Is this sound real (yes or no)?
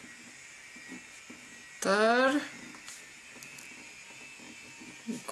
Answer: yes